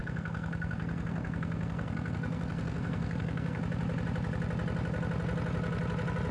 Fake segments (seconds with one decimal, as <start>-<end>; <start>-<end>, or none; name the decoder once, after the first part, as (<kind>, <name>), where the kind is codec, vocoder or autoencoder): 0.0-3.6 (codec, SNAC)